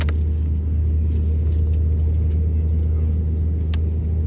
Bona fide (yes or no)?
yes